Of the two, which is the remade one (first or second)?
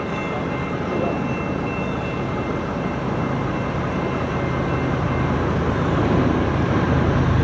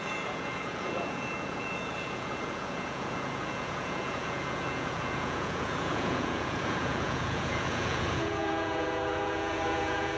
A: second